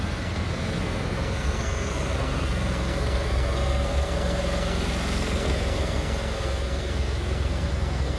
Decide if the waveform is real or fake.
fake